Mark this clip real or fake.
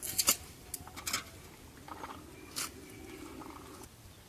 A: real